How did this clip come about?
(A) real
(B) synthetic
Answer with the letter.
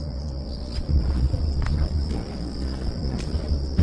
B